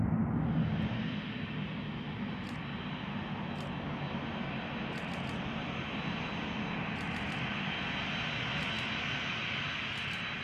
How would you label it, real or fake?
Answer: real